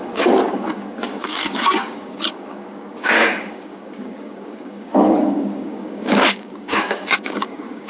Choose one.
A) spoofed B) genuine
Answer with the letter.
A